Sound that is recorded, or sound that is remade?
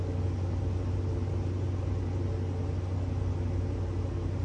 recorded